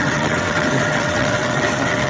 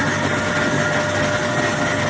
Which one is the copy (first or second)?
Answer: first